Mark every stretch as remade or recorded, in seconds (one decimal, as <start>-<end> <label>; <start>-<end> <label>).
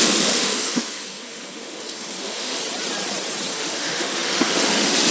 0.0-2.6 remade; 2.6-3.5 recorded; 3.5-5.1 remade